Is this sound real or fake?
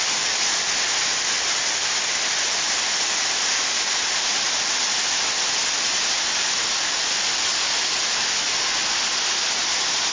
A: real